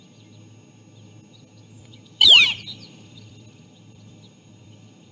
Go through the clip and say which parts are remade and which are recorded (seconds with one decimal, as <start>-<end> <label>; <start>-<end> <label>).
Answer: 0.0-1.8 recorded; 1.8-5.1 remade